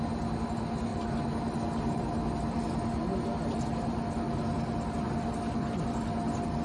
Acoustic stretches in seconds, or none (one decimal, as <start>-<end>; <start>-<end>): 0.0-6.6